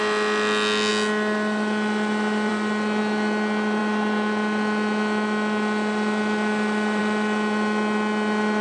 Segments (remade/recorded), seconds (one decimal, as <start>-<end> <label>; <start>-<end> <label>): 0.0-8.6 recorded